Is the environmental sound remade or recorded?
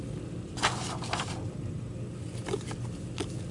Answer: recorded